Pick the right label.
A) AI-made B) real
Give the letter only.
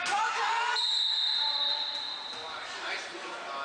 A